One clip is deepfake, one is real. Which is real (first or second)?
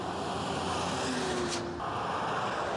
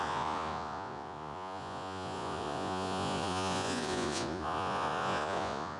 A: first